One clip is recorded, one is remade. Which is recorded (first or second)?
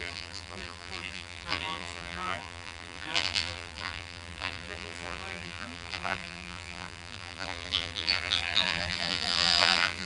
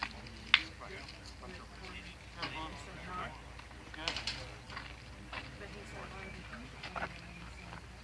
second